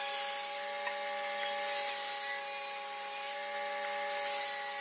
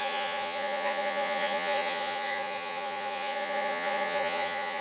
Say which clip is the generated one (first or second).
second